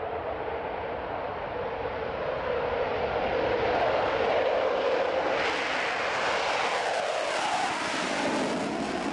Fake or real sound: real